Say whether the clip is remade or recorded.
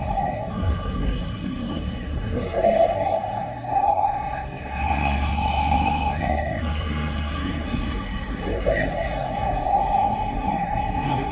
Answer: remade